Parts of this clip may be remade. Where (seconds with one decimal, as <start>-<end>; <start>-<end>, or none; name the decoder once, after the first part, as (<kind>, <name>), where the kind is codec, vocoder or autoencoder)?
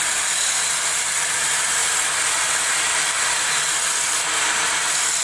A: none